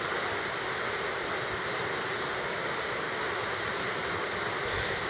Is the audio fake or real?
real